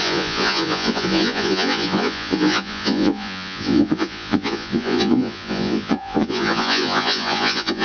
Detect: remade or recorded remade